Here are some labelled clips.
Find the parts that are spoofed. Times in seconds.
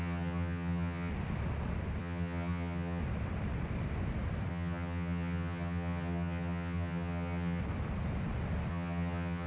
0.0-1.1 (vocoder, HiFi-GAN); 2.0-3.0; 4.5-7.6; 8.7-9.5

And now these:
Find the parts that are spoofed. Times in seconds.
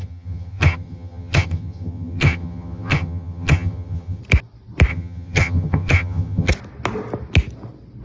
0.0-4.2 (vocoder, HiFi-GAN); 4.9-6.5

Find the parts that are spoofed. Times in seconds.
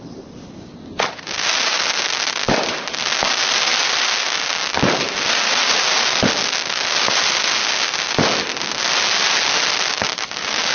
none